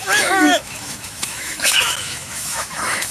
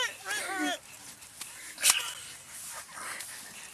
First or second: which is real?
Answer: second